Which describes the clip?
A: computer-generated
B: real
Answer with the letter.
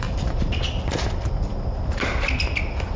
B